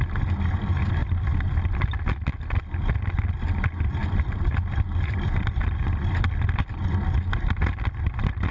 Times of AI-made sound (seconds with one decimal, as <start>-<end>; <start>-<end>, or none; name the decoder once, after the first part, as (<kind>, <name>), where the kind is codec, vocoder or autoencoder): 1.0-1.6 (vocoder, BigVGAN v2); 4.0-5.8